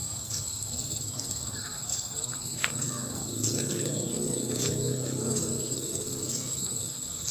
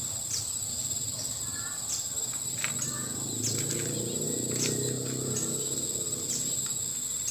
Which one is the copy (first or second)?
first